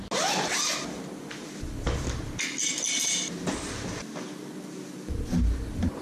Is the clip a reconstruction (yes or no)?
no